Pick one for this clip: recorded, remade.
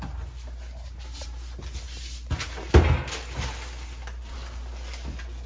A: recorded